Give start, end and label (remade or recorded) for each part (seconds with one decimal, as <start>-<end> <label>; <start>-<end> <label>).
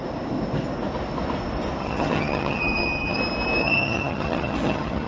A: 0.0-1.8 recorded; 1.8-3.2 remade; 3.2-3.6 recorded; 3.6-5.1 remade